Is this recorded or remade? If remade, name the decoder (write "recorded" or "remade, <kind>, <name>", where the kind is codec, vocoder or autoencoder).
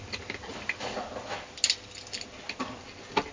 recorded